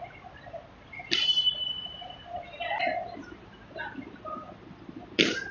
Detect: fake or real fake